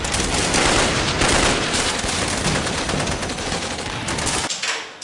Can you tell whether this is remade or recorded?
recorded